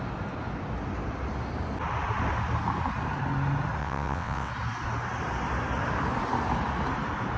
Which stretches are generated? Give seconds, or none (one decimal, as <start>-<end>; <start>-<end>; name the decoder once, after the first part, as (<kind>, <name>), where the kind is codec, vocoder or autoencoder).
3.8-4.5 (vocoder, WaveNeXt)

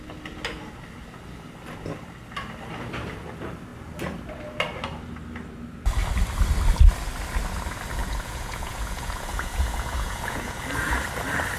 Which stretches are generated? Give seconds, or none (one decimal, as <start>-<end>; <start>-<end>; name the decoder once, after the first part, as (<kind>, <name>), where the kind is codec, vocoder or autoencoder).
8.0-10.6 (vocoder, Vocos)

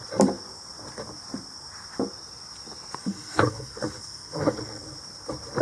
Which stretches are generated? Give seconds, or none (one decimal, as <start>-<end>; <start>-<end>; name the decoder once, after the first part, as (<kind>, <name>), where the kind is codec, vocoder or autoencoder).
3.0-4.8 (codec, SNAC)